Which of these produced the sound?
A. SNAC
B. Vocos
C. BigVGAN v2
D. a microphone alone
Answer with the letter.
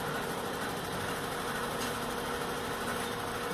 D